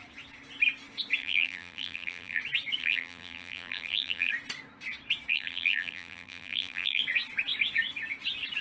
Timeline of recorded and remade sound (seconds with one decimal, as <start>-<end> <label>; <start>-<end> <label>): 0.0-1.2 recorded; 1.2-2.4 remade; 2.4-2.8 recorded; 2.8-4.3 remade; 4.3-5.3 recorded; 5.3-7.0 remade; 7.0-8.6 recorded